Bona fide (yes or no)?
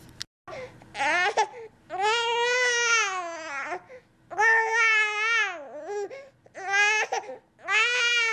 yes